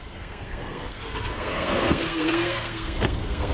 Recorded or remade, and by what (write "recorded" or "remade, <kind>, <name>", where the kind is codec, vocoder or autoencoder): remade, codec, SNAC